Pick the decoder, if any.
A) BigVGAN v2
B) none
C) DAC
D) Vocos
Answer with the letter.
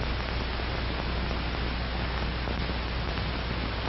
B